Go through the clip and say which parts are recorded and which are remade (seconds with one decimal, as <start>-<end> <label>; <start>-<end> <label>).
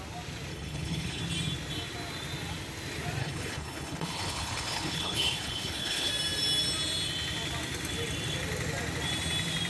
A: 0.0-0.5 recorded; 0.5-1.2 remade; 1.2-3.2 recorded; 3.2-6.1 remade; 6.1-9.7 recorded